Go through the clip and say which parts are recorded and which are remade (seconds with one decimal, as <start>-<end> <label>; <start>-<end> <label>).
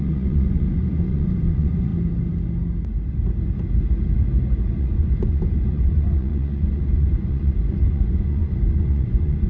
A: 0.0-1.9 remade; 1.9-4.8 recorded; 4.8-9.5 remade